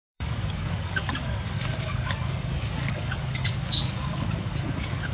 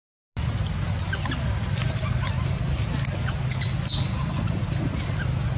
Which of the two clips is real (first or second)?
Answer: second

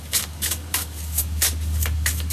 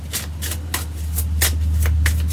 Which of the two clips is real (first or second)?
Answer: second